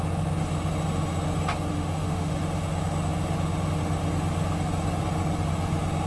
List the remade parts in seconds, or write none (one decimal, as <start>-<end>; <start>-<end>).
1.7-2.3